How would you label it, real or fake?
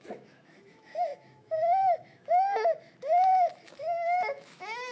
fake